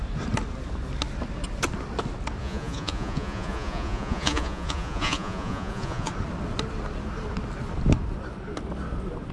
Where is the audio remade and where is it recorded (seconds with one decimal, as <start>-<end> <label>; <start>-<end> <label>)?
0.0-2.4 recorded; 2.4-6.1 remade; 6.1-9.3 recorded